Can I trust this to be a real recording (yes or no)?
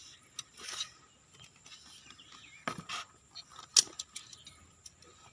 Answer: yes